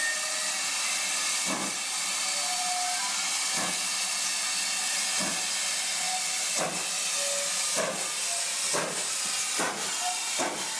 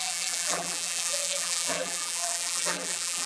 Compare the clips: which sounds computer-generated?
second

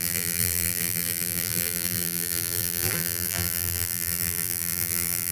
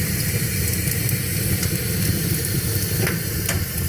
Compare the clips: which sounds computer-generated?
first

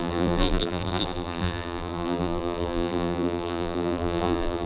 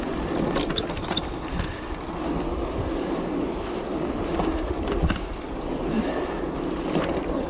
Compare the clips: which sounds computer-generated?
first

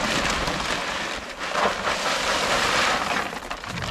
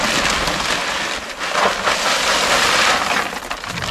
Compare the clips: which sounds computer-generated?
first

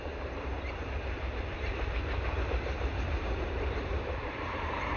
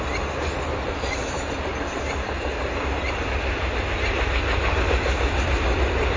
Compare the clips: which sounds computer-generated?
first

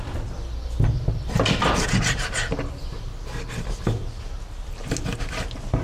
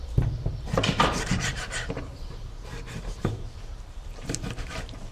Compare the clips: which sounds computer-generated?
second